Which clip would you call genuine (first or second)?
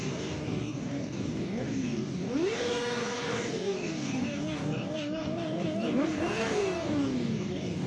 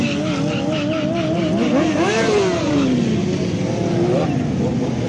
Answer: second